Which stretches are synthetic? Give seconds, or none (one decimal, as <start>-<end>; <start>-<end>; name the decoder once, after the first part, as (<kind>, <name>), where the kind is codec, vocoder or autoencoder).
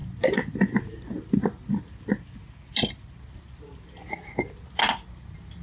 none